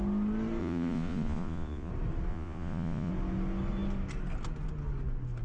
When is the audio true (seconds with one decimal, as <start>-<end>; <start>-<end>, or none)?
0.0-0.6; 1.9-2.3; 3.1-5.4